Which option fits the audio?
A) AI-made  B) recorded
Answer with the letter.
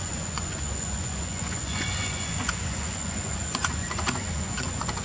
A